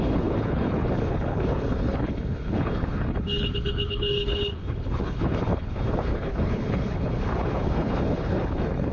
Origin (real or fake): fake